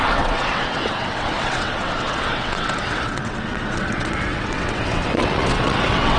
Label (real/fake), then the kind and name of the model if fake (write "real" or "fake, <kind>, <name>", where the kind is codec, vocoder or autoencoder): fake, vocoder, WaveNeXt